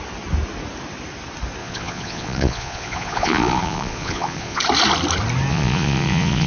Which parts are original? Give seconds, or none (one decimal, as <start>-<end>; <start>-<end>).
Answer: 0.0-1.6; 4.6-5.5